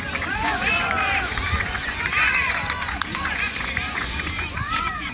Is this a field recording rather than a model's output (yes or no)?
no